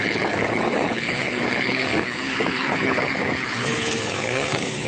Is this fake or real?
fake